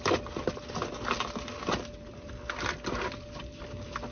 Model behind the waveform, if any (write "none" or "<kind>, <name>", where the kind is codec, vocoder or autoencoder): none